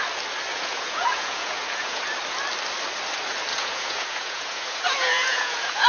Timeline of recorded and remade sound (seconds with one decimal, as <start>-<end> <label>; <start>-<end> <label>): 0.0-0.5 recorded; 0.5-2.0 remade; 2.0-3.5 recorded; 3.5-5.9 remade